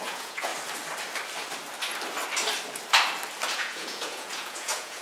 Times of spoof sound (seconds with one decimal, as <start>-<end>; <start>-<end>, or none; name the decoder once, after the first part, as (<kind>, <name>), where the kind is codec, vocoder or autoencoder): 0.0-0.5 (vocoder, Vocos); 3.5-5.0